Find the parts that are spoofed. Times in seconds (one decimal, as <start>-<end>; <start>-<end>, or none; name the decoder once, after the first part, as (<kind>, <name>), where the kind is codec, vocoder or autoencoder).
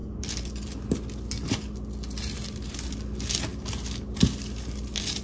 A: none